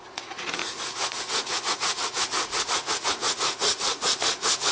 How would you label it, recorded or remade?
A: remade